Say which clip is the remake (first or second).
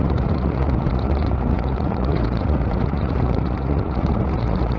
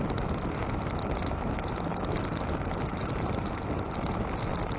first